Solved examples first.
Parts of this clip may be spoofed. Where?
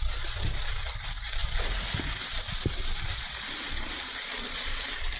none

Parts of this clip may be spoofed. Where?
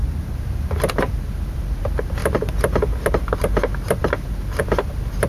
none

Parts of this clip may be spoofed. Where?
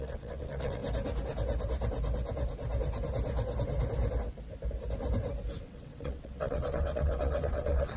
0.0-0.8 (vocoder, WaveNeXt); 5.6-8.0